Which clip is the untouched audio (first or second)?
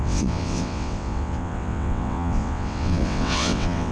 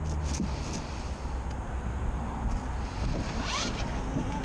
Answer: second